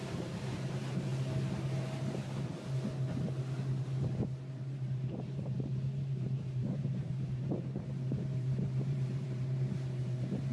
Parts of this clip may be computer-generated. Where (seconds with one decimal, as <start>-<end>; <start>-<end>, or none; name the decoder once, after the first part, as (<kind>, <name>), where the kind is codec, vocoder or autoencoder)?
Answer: 0.0-1.1 (vocoder, BigVGAN v2); 4.5-10.5